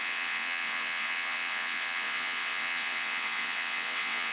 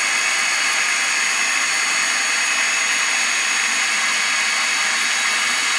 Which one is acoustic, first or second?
second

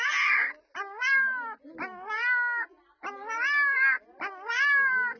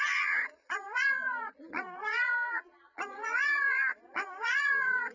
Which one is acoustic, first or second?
first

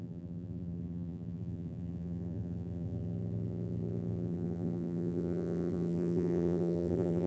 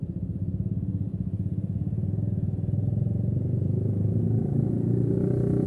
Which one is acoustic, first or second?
second